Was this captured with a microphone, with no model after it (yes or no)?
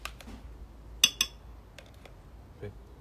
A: yes